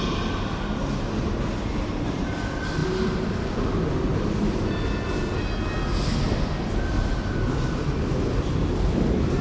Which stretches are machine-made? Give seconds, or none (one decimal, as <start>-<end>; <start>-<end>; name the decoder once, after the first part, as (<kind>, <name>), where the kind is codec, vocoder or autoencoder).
none